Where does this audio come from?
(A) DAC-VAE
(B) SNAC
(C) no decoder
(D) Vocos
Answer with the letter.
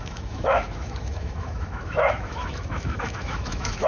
A